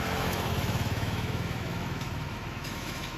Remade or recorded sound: remade